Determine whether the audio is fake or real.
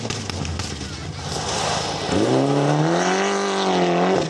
real